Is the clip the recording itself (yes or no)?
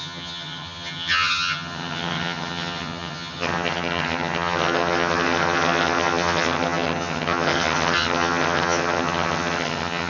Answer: no